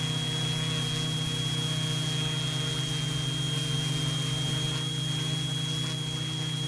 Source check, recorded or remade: recorded